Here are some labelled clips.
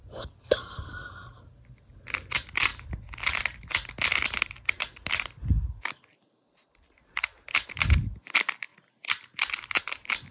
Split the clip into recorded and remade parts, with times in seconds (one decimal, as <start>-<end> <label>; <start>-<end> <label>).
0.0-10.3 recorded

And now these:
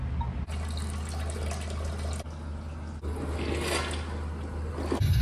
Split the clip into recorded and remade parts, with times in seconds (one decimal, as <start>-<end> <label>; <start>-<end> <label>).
0.0-5.2 recorded

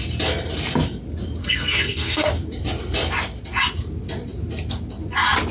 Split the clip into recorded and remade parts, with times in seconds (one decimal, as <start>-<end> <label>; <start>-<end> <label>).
0.0-1.4 recorded; 1.4-2.3 remade; 2.3-5.5 recorded

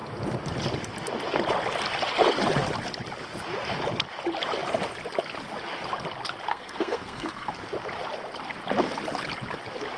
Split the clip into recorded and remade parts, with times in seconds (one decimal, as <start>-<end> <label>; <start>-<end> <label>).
0.0-6.5 recorded; 6.5-7.5 remade; 7.5-10.0 recorded